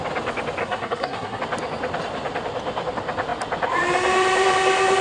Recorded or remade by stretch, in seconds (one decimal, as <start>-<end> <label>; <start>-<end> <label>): 0.0-0.6 recorded; 0.6-1.4 remade; 1.4-5.0 recorded